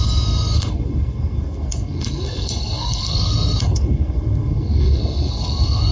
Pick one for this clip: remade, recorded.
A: remade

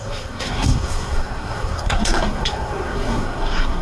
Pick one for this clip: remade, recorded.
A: remade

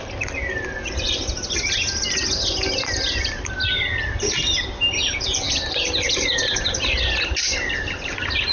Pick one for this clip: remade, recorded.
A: recorded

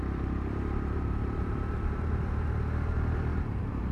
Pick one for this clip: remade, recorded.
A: remade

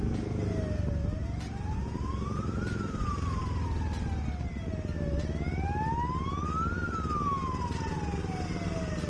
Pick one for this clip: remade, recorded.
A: recorded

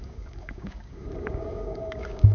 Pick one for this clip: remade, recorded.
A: remade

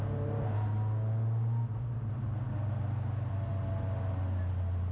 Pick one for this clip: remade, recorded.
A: recorded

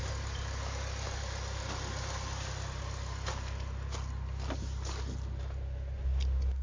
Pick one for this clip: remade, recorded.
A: recorded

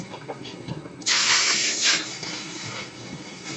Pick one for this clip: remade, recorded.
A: remade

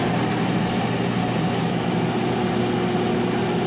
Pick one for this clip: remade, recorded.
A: recorded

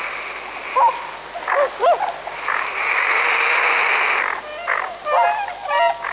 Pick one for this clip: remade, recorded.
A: recorded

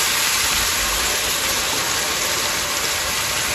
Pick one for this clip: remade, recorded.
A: remade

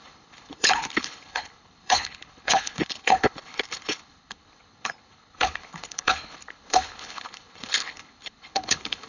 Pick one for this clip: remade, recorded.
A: remade